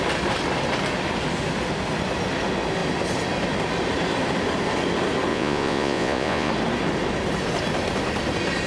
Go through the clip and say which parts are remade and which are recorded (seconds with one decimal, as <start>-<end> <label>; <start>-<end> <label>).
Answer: 0.0-5.3 recorded; 5.3-6.5 remade; 6.5-8.7 recorded